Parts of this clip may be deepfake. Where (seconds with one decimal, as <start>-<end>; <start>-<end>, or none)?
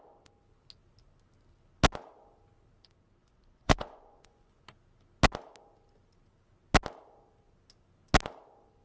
3.2-4.6